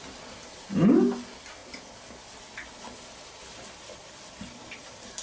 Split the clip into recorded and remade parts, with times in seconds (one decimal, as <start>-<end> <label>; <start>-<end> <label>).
0.0-5.2 recorded